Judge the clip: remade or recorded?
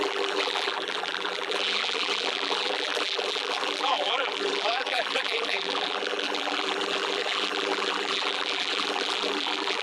remade